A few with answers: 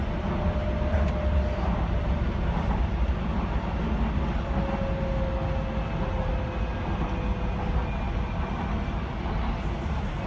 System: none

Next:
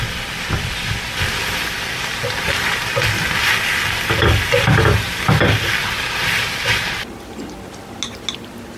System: none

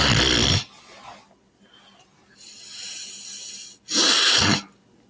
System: none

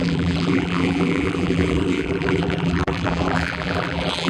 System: vocoder, BigVGAN v2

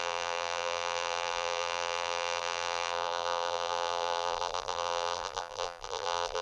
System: vocoder, BigVGAN v2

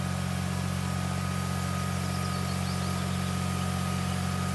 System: none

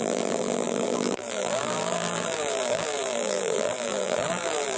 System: vocoder, BigVGAN v2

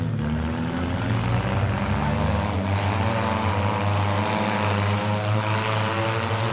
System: none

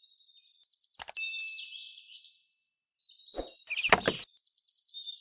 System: vocoder, BigVGAN v2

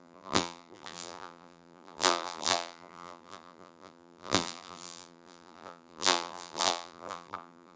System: vocoder, BigVGAN v2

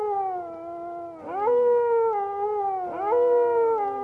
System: none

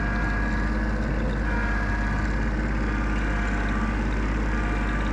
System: none